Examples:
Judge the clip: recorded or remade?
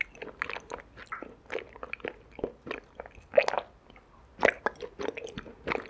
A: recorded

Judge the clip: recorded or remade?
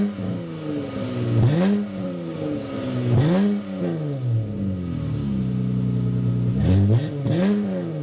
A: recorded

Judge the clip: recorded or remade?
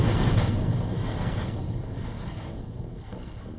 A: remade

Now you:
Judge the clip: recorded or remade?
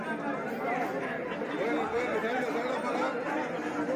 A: recorded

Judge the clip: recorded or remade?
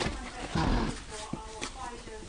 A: recorded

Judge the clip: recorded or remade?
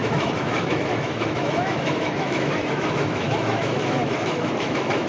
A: remade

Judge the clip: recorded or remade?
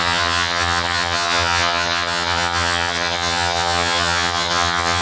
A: remade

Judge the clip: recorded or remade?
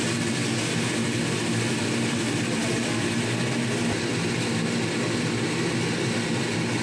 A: recorded